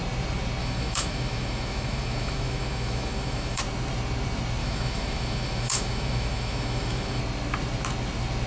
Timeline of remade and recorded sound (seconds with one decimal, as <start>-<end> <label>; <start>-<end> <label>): 0.0-0.6 recorded; 0.6-3.6 remade; 3.6-4.6 recorded; 4.6-7.2 remade; 7.2-8.5 recorded